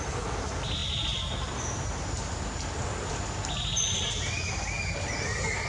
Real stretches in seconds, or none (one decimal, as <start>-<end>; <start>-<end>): 0.0-5.7